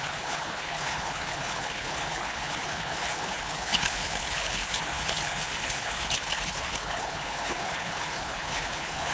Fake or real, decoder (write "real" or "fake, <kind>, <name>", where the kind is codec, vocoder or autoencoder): fake, codec, HILCodec